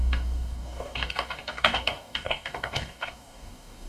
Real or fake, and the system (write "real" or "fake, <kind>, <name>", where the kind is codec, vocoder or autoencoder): fake, codec, DAC